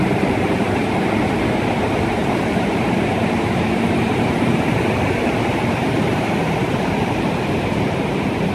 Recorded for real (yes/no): no